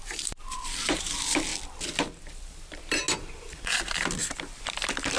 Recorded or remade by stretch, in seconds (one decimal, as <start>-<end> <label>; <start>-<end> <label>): 0.0-1.0 recorded; 1.0-1.5 remade; 1.5-3.3 recorded; 3.3-5.2 remade